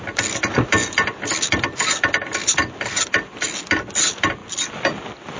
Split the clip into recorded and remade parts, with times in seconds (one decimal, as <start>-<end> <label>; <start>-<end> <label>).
0.0-5.4 recorded